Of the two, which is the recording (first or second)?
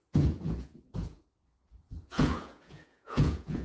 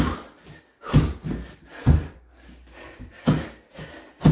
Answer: second